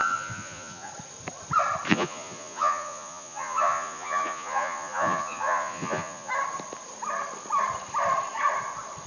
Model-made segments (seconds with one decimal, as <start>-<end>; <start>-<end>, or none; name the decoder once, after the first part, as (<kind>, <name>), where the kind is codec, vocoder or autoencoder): 0.0-0.9 (vocoder, Vocos); 1.9-6.3